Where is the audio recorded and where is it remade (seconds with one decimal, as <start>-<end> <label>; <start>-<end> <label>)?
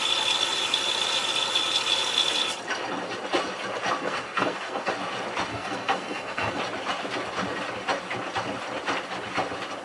0.0-4.0 recorded; 4.0-4.9 remade; 4.9-5.5 recorded; 5.5-6.6 remade; 6.6-9.8 recorded